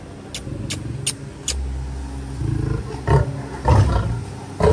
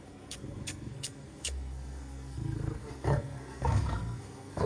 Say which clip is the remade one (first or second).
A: second